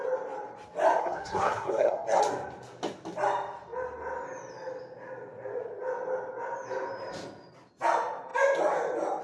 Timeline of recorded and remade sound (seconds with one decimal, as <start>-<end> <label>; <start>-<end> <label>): 0.0-1.0 recorded; 1.0-2.2 remade; 2.2-9.2 recorded